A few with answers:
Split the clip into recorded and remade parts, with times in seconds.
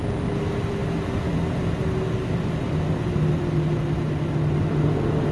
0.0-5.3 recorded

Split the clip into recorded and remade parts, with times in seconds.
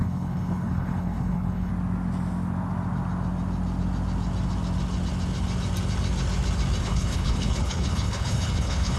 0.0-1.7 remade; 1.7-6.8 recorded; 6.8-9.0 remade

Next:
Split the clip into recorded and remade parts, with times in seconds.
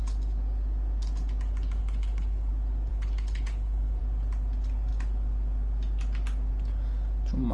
0.0-1.8 recorded; 1.8-2.5 remade; 2.5-2.9 recorded; 2.9-4.0 remade; 4.0-7.5 recorded